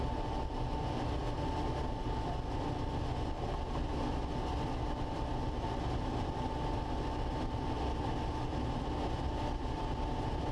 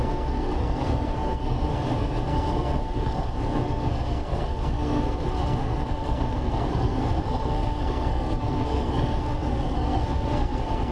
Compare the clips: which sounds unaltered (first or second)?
first